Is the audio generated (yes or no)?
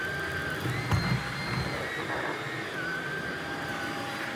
no